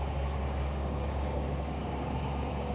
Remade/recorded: remade